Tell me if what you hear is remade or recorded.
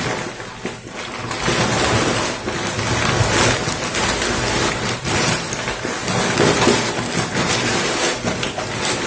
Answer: recorded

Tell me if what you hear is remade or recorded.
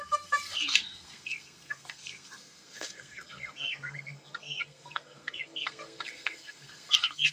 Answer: remade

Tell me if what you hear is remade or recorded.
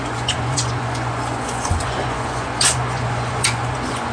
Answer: remade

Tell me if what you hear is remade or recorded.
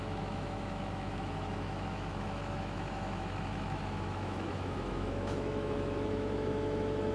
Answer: remade